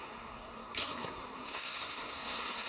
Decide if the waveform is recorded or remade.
remade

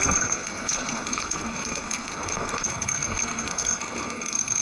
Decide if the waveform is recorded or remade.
remade